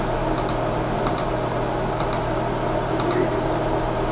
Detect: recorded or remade recorded